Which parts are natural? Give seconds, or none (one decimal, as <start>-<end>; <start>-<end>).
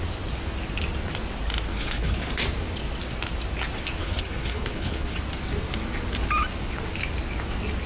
0.0-1.7; 2.3-4.0; 5.1-7.9